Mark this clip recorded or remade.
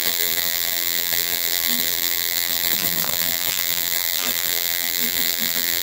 remade